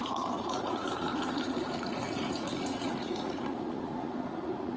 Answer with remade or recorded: remade